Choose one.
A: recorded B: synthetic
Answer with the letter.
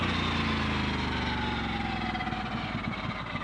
A